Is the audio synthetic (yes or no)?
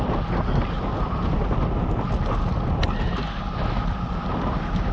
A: no